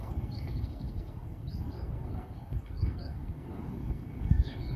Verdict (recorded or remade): remade